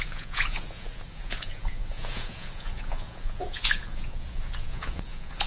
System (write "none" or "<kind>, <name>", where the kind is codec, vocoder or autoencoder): vocoder, Vocos